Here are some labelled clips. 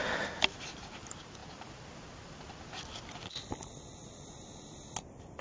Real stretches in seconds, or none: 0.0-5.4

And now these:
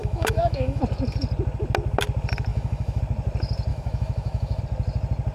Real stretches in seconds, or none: 0.8-2.5; 3.0-3.7; 4.6-5.3

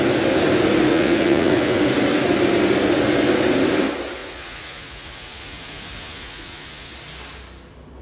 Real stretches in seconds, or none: 0.0-0.9; 1.8-4.2; 6.9-8.0

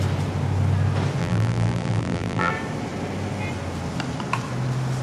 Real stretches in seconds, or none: 0.0-1.2; 2.5-5.0

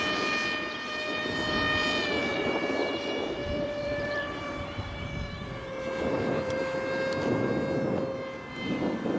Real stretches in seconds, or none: 0.0-2.3; 6.6-9.2